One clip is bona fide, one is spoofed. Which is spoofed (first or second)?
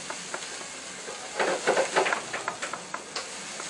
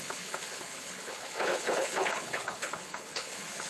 second